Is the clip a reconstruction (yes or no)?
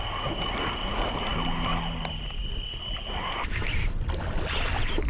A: no